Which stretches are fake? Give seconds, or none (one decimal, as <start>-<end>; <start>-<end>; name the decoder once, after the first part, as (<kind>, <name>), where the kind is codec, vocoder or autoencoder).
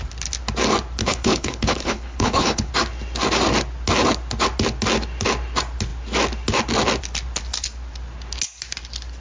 1.0-2.7 (codec, HILCodec)